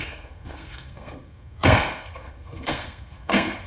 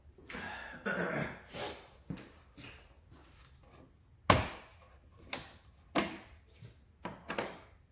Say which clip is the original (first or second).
second